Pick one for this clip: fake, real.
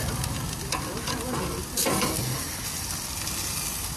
real